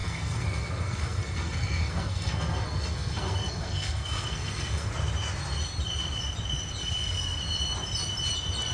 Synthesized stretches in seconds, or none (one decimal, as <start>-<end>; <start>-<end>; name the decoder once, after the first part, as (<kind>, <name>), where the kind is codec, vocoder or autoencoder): 0.0-4.9 (codec, SNAC); 6.8-7.4